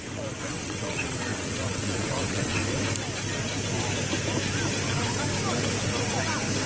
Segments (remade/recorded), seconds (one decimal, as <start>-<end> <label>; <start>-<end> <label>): 0.0-2.6 remade; 2.6-6.7 recorded